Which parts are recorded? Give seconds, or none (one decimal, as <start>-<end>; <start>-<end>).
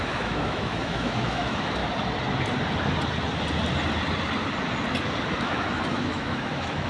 1.8-5.4